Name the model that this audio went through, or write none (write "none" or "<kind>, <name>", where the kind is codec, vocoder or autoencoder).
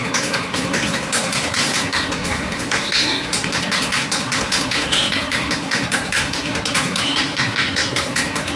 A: codec, SNAC